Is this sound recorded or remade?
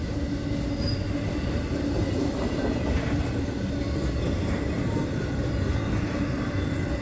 recorded